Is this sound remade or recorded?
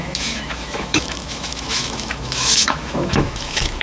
remade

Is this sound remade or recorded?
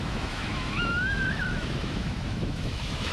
remade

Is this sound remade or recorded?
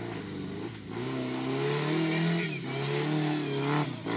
recorded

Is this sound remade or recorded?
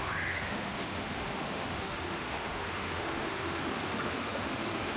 remade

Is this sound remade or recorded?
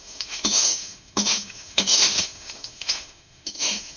remade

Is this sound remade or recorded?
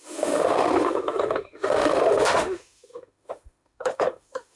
remade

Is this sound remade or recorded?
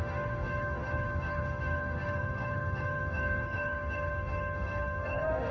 remade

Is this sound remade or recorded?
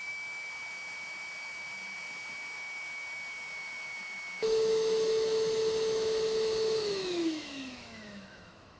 remade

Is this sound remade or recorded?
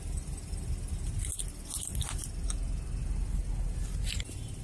recorded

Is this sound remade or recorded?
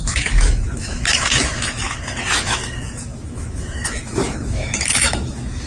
remade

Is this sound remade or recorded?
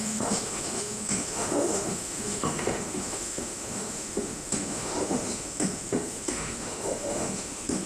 remade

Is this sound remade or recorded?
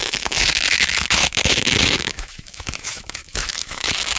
remade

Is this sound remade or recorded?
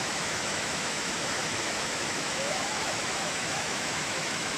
remade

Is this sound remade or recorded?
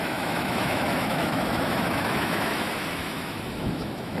remade